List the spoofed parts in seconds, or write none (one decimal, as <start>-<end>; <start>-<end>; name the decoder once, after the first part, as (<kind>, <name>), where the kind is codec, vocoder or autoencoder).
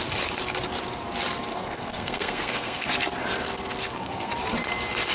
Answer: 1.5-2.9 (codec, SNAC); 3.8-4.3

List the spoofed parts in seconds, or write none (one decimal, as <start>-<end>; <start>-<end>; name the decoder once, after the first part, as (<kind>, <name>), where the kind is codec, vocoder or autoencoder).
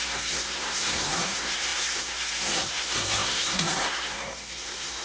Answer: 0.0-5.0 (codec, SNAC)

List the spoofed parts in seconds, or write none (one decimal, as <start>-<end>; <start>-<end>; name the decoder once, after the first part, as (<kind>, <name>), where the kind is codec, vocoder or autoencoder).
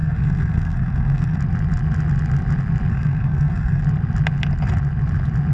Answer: 0.0-1.4 (codec, SNAC); 2.9-3.8